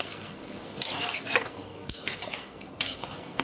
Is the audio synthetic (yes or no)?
yes